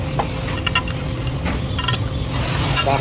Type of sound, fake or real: real